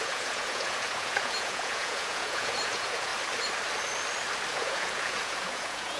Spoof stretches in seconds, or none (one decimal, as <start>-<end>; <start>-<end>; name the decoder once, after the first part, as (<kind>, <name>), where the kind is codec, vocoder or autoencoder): 0.0-3.1 (vocoder, Vocos); 4.5-6.0